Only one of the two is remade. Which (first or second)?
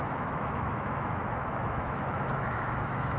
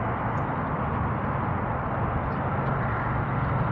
first